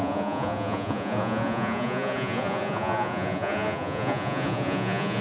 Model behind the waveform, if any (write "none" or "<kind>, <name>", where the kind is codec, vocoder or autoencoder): vocoder, Vocos